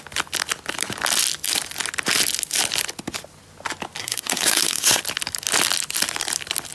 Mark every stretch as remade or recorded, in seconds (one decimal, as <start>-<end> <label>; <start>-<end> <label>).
0.0-4.0 recorded; 4.0-5.0 remade; 5.0-6.7 recorded